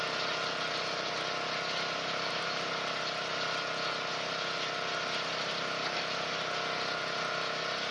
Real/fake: real